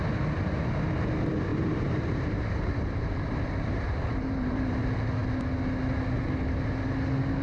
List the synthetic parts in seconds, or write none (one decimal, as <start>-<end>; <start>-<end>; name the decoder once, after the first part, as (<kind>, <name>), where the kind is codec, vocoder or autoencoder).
1.5-4.8 (vocoder, BigVGAN v2)